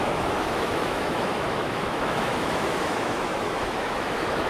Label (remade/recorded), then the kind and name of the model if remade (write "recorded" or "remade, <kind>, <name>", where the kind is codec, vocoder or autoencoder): remade, autoencoder, DAC-VAE